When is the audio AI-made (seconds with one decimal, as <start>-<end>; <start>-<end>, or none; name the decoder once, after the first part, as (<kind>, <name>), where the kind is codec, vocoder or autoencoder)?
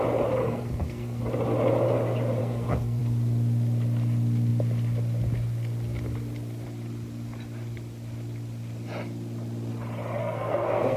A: 0.4-1.2 (codec, SNAC); 2.4-3.0; 10.2-11.0